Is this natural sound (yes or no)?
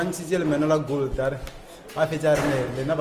yes